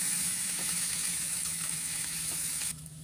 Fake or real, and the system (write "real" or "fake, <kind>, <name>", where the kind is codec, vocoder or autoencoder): fake, autoencoder, DAC-VAE